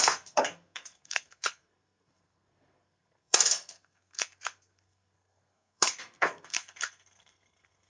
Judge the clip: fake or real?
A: fake